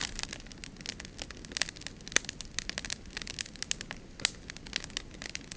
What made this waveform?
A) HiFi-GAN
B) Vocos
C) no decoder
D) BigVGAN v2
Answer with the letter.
C